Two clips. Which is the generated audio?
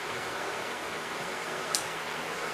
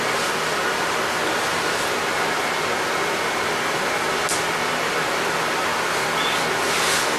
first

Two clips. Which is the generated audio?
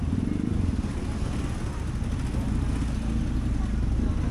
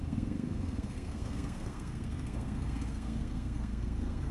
second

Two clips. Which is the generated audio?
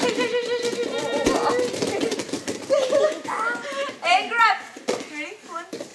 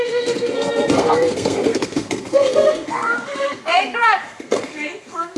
second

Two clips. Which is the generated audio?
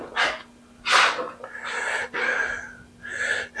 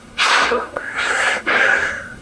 second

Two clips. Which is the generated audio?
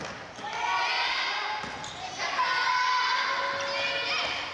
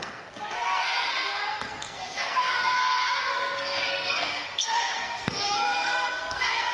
second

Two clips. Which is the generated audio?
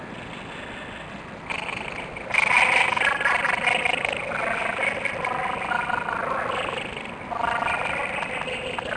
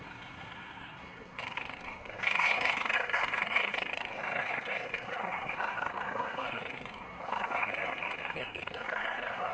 second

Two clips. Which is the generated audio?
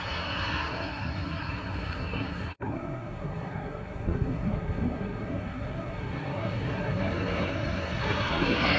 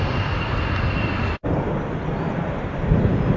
first